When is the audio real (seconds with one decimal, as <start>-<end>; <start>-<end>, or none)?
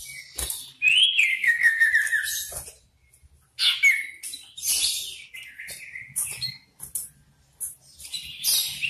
0.0-1.3; 1.9-8.9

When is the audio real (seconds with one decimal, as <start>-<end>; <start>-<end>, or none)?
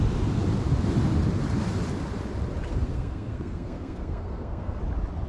0.0-2.7; 4.8-5.3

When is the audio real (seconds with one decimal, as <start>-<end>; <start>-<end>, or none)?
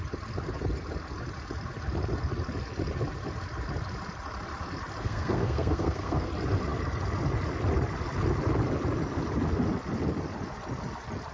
0.0-5.0; 6.3-11.3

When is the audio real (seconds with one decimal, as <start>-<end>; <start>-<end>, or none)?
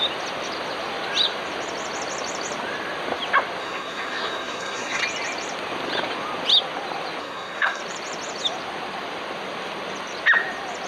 0.0-3.6; 5.0-7.2; 7.8-10.9